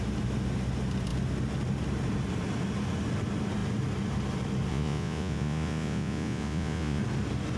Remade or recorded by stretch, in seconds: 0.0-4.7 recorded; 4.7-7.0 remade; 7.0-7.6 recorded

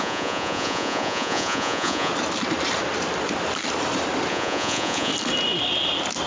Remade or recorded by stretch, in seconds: 0.0-2.1 remade; 2.1-4.3 recorded; 4.3-5.1 remade; 5.1-6.3 recorded

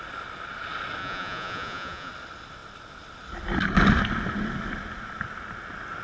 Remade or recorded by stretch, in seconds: 0.0-1.0 recorded; 1.0-2.1 remade; 2.1-6.0 recorded

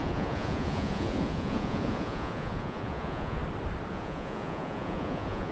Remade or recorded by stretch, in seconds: 0.0-3.4 remade; 3.4-3.9 recorded; 3.9-5.5 remade

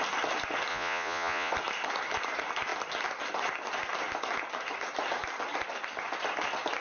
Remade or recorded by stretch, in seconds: 0.0-0.7 recorded; 0.7-1.5 remade; 1.5-6.8 recorded